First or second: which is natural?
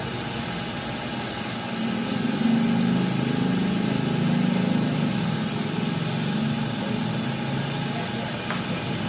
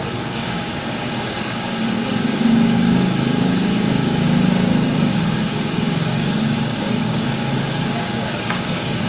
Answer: first